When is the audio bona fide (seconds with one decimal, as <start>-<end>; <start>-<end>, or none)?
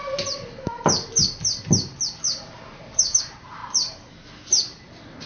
0.0-5.3